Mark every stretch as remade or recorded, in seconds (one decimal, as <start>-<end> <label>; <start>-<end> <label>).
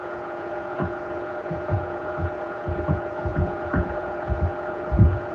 0.0-5.3 remade